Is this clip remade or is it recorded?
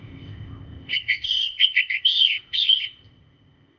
remade